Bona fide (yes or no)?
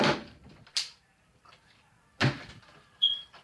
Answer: no